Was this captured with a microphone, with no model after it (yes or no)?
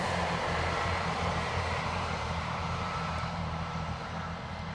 no